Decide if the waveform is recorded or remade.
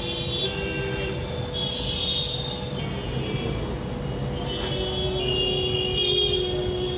recorded